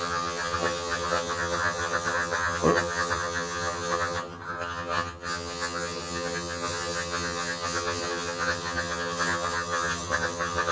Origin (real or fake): fake